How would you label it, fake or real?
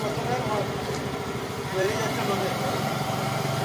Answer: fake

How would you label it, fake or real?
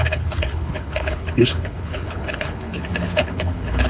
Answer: fake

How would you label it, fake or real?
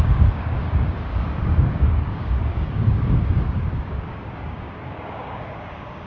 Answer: fake